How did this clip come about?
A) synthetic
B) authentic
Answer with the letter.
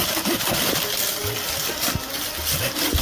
B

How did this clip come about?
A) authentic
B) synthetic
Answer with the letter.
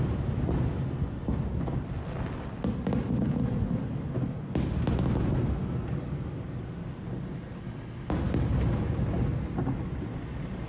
A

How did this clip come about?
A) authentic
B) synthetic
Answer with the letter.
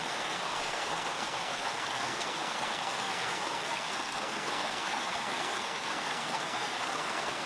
B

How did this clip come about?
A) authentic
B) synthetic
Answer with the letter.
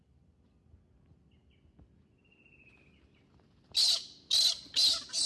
A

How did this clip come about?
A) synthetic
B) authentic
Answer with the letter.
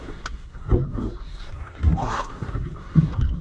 A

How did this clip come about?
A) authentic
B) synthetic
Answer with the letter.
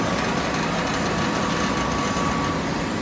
A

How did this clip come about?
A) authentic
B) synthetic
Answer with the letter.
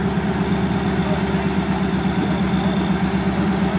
A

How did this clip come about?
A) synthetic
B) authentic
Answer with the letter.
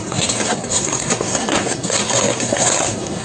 A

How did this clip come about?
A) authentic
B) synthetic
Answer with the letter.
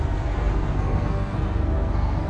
B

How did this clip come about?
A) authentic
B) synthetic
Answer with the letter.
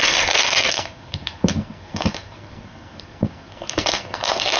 B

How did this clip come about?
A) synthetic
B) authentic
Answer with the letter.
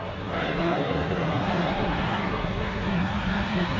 A